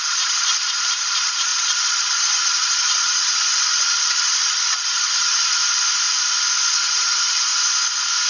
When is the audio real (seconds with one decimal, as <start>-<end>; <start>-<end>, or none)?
5.6-6.6; 7.5-8.3